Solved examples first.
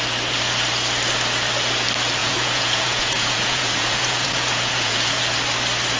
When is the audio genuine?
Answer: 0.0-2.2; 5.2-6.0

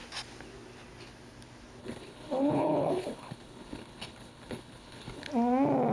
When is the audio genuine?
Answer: 0.0-1.8; 5.3-5.9

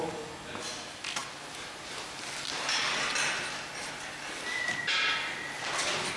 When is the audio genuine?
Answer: 0.0-6.2

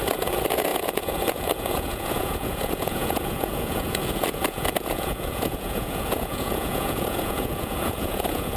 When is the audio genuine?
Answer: none

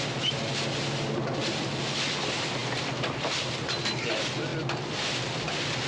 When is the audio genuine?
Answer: 0.0-5.9